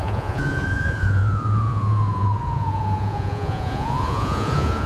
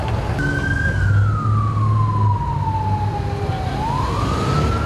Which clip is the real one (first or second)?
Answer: second